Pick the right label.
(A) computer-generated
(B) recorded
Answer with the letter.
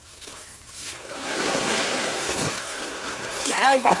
A